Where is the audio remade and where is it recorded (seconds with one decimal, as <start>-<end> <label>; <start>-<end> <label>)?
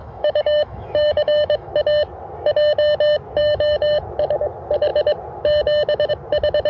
0.0-1.7 remade; 1.7-3.4 recorded; 3.4-4.0 remade; 4.0-6.7 recorded